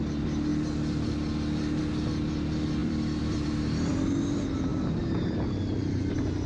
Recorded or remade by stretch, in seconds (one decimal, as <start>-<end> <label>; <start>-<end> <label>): 0.0-2.8 recorded; 2.8-3.9 remade; 3.9-6.5 recorded